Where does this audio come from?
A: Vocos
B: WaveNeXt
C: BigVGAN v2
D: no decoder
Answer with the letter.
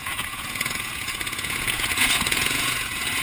A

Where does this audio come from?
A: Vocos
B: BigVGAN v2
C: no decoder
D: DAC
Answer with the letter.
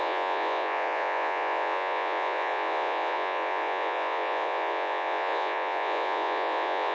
A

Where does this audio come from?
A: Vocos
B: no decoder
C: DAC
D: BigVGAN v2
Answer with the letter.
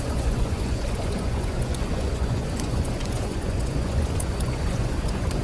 A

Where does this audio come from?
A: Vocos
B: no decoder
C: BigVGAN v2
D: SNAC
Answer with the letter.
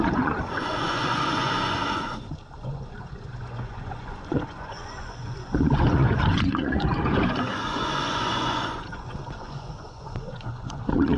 A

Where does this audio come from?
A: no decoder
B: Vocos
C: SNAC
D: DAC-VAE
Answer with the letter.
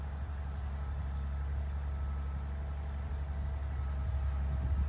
A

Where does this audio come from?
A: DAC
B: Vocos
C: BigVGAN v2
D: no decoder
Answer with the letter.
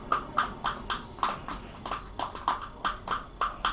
D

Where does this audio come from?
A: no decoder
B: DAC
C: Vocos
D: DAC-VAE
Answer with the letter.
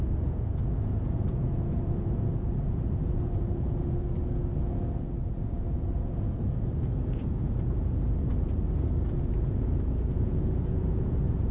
C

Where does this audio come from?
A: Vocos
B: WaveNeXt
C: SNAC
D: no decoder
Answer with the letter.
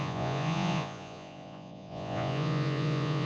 A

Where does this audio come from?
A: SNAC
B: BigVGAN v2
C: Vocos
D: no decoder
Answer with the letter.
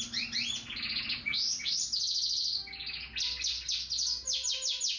D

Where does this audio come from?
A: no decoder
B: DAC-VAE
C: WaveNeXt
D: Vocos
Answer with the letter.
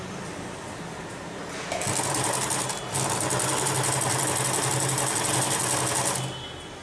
A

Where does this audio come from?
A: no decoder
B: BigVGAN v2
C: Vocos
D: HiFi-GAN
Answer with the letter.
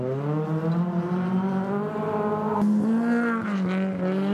A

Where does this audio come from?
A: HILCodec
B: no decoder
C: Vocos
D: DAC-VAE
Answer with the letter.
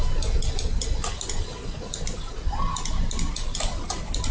B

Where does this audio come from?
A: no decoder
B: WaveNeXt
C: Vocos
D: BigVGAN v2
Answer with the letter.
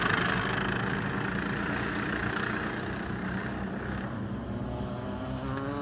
A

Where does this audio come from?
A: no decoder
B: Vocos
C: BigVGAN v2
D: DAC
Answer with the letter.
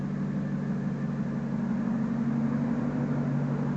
A